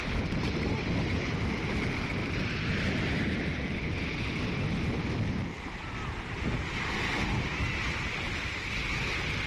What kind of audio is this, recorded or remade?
recorded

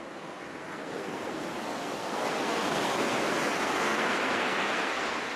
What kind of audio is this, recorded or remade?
remade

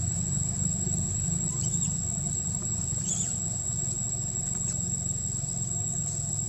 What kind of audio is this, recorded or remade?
recorded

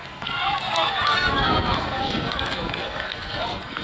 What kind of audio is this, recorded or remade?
remade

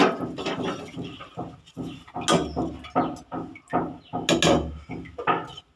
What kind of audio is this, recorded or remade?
recorded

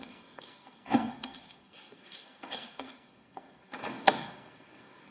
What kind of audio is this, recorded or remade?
remade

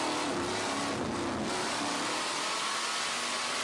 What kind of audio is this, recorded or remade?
recorded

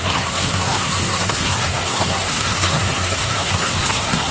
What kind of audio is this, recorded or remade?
remade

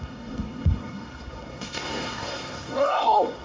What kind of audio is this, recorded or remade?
remade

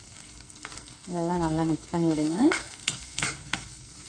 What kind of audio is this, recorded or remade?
remade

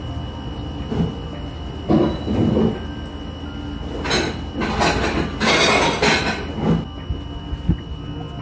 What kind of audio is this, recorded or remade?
recorded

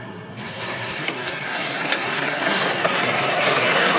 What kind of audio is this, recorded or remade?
remade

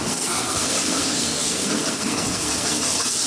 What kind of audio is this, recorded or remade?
remade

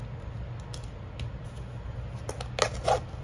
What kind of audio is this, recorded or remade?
recorded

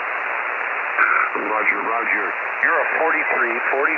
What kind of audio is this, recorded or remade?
recorded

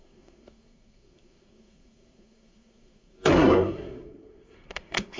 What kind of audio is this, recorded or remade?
remade